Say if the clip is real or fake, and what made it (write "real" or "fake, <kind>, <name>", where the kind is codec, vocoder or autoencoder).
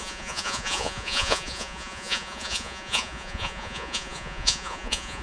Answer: fake, vocoder, Vocos